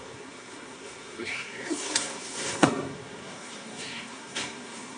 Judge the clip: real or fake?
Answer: fake